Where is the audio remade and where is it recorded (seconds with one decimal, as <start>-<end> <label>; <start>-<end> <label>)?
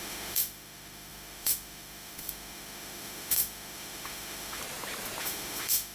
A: 0.0-4.6 remade; 4.6-5.2 recorded; 5.2-5.9 remade